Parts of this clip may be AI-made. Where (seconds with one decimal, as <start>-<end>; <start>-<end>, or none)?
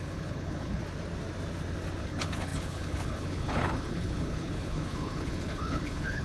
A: 0.0-0.8; 2.0-6.2